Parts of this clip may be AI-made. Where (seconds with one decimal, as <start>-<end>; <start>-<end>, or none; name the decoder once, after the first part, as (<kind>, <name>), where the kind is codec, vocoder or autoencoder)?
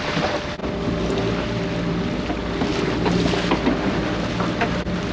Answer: none